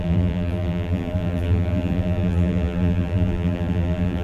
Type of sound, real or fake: fake